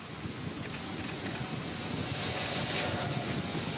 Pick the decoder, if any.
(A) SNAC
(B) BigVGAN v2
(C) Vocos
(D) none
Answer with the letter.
C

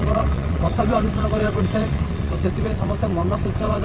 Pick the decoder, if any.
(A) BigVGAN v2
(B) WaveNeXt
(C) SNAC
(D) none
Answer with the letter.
B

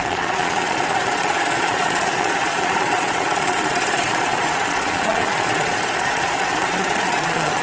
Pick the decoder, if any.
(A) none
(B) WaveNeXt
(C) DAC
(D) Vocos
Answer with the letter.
D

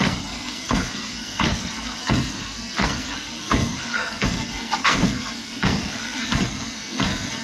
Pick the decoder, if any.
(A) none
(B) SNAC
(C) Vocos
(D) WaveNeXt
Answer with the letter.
B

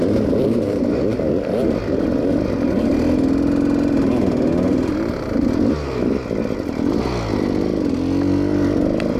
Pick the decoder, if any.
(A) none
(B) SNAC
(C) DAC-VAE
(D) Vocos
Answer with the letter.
A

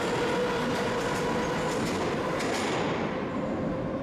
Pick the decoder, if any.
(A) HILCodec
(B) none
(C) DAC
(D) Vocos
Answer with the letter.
B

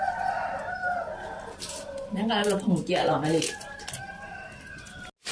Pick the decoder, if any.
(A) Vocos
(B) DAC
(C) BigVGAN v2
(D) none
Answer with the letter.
D